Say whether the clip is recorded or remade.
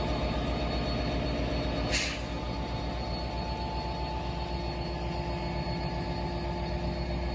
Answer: recorded